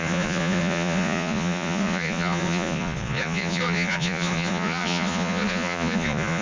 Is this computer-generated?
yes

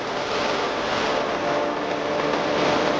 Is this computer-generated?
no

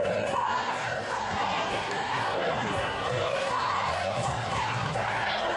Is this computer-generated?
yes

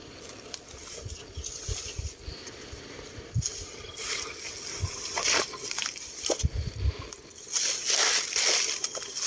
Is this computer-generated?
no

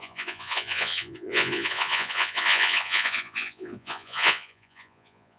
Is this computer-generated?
yes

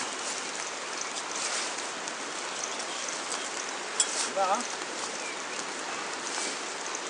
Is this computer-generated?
no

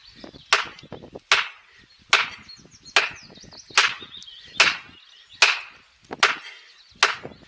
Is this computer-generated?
no